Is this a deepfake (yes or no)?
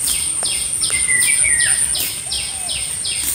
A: no